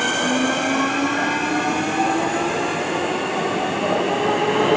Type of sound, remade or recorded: recorded